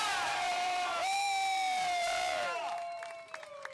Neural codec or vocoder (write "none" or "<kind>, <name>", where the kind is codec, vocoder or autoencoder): vocoder, BigVGAN v2